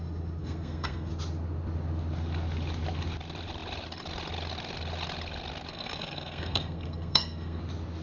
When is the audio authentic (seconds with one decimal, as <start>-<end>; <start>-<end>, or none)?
0.0-0.4; 1.1-5.7; 7.6-8.0